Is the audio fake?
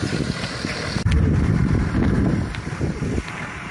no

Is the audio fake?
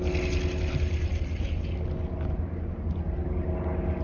no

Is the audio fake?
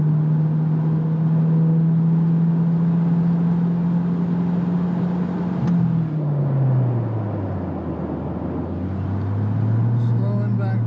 no